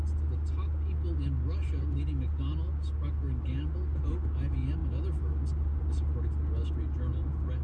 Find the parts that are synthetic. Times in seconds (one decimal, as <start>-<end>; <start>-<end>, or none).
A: none

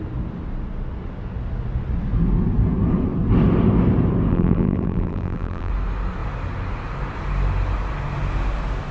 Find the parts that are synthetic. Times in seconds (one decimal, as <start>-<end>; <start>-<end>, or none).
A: 4.3-5.7

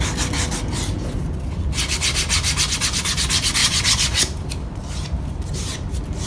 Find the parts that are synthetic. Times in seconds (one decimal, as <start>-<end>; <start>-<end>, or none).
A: 3.6-4.2

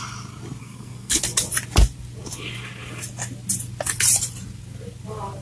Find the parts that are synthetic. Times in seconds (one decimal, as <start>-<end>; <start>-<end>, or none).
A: 0.6-1.2

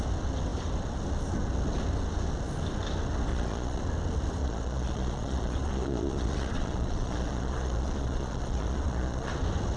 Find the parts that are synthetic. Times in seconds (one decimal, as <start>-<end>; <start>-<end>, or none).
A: 3.3-3.8; 4.4-9.3

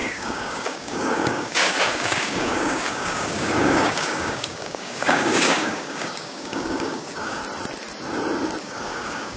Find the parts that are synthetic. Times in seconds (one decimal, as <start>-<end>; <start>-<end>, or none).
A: 0.0-7.4; 8.6-9.4

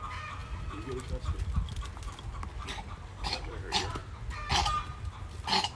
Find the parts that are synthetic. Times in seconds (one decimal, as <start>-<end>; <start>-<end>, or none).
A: 3.1-3.6